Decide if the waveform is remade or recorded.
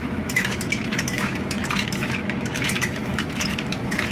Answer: remade